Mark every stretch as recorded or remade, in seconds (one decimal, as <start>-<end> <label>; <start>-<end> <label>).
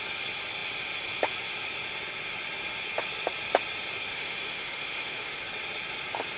0.0-4.1 recorded; 4.1-5.4 remade; 5.4-6.4 recorded